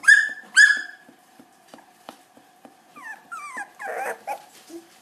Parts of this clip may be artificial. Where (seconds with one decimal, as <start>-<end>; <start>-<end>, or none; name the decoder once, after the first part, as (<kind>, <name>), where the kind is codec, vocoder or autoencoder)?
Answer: 0.0-2.9 (vocoder, BigVGAN v2); 4.5-5.0